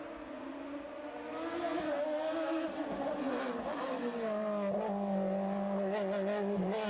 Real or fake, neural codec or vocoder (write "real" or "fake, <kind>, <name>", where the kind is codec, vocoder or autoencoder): real